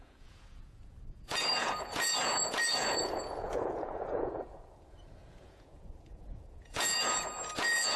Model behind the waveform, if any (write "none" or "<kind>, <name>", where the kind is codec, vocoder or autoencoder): vocoder, Vocos